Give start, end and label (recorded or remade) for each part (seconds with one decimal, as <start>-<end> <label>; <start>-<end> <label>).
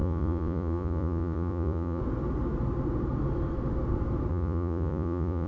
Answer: 0.0-2.0 remade; 2.0-4.3 recorded; 4.3-5.5 remade